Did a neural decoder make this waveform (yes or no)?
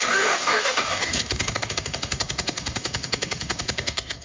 yes